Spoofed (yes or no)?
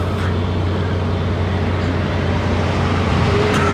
no